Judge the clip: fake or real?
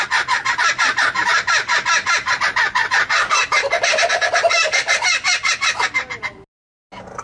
real